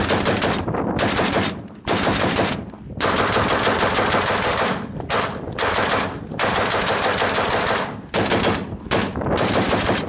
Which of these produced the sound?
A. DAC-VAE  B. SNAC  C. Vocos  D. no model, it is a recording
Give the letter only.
D